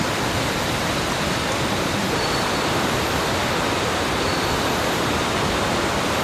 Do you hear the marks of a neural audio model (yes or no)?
no